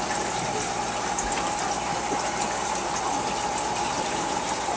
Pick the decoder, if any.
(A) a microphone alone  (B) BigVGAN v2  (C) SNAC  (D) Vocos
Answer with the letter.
A